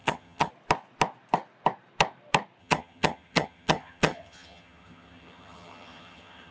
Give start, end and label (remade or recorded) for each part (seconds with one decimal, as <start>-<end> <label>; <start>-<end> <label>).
0.0-0.5 remade; 0.5-2.6 recorded; 2.6-6.5 remade